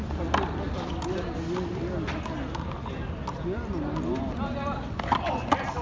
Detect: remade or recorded recorded